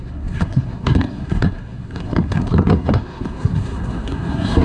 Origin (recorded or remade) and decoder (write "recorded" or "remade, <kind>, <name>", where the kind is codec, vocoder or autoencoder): remade, codec, SNAC